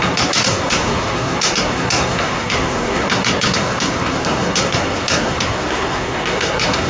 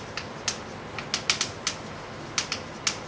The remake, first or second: first